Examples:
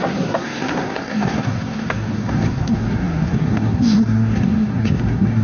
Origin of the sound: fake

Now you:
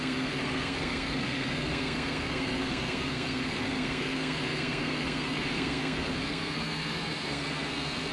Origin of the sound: fake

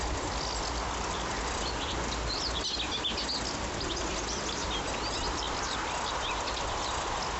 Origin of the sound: real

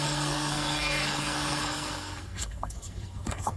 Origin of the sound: fake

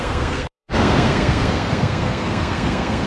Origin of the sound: fake